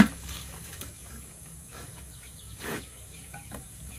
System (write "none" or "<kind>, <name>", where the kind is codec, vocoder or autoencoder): codec, DAC